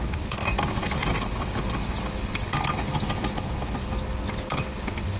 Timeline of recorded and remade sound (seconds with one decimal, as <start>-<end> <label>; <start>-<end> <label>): 0.0-5.2 recorded